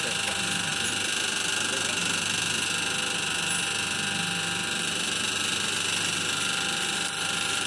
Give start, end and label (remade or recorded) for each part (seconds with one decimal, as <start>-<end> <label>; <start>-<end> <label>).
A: 0.0-7.7 recorded